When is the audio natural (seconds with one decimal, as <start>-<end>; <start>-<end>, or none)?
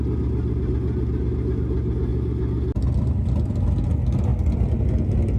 0.0-4.3; 4.8-5.4